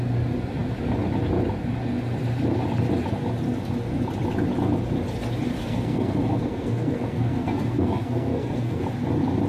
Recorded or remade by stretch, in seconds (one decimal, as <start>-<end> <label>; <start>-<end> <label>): 0.0-5.6 recorded; 5.6-8.8 remade; 8.8-9.5 recorded